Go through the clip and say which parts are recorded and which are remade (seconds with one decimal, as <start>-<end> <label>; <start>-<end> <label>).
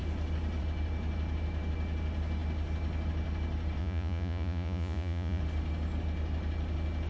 0.0-3.8 recorded; 3.8-5.4 remade; 5.4-7.1 recorded